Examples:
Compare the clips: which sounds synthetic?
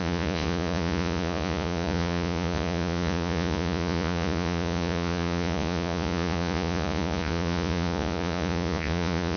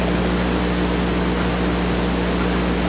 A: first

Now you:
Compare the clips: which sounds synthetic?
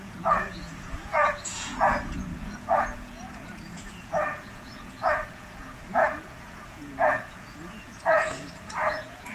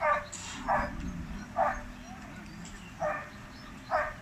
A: first